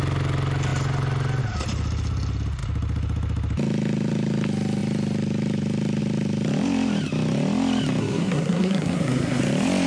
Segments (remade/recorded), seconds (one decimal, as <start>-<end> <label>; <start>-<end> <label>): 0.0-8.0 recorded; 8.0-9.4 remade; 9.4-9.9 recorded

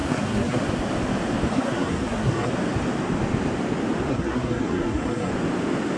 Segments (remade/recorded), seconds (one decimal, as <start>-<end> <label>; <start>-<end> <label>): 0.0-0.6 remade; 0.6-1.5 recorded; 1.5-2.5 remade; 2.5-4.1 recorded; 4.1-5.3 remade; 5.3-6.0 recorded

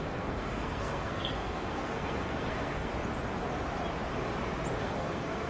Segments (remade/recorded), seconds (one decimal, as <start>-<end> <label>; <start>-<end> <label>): 0.0-2.9 remade; 2.9-4.8 recorded; 4.8-5.5 remade

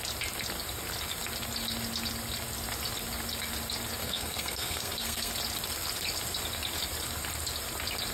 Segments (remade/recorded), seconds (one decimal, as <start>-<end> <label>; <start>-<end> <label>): 0.0-4.0 recorded; 4.0-5.3 remade; 5.3-8.1 recorded

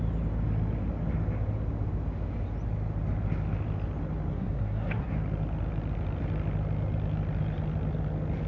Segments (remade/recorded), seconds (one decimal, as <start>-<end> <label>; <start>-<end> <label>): 0.0-4.3 recorded; 4.3-5.1 remade; 5.1-8.5 recorded

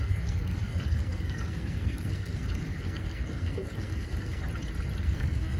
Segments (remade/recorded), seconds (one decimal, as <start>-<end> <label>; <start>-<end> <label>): 0.0-4.4 remade; 4.4-5.0 recorded; 5.0-5.6 remade

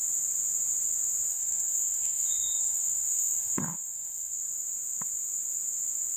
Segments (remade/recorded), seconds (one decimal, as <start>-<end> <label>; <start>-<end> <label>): 0.0-1.3 recorded; 1.3-4.4 remade; 4.4-6.2 recorded

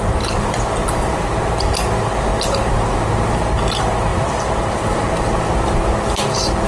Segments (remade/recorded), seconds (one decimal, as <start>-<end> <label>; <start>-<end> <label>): 0.0-6.7 recorded